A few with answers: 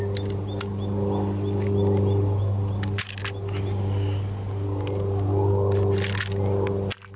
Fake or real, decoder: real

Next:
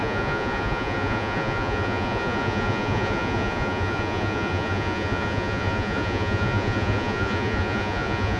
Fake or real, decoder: fake, vocoder, Vocos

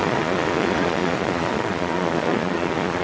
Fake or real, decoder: fake, vocoder, Vocos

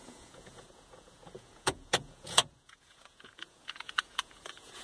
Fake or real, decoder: fake, vocoder, Vocos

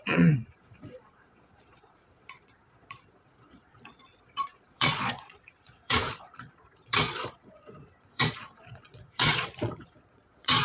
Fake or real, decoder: fake, vocoder, Vocos